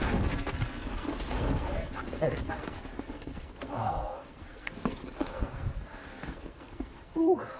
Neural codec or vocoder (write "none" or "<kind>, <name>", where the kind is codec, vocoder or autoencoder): codec, SNAC